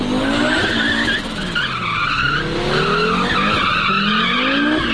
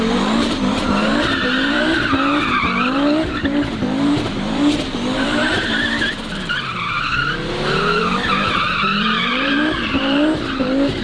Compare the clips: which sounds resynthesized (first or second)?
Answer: second